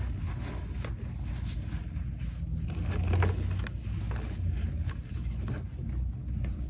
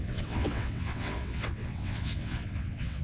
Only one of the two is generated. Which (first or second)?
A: second